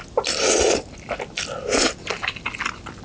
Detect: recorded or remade recorded